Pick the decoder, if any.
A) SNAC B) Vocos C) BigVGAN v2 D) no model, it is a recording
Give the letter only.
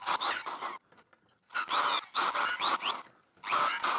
D